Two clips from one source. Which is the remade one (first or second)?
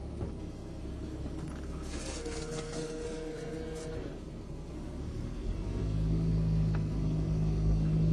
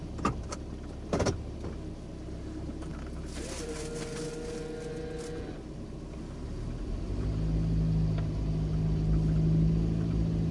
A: first